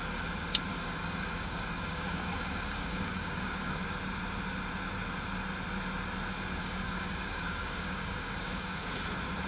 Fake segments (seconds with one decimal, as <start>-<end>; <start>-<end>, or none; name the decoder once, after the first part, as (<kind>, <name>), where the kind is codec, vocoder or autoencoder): 0.7-3.8 (codec, DAC); 6.6-8.9